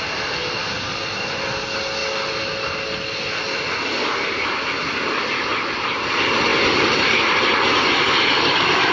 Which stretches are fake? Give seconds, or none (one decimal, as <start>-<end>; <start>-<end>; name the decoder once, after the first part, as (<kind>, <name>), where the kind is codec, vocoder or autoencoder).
none